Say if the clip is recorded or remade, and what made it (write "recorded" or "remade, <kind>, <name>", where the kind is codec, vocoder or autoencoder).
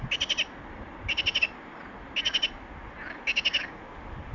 recorded